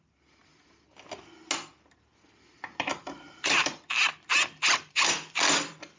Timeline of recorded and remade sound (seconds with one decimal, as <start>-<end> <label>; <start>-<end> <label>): 0.0-0.4 remade; 0.4-3.0 recorded; 3.0-4.0 remade; 4.0-4.9 recorded; 4.9-6.0 remade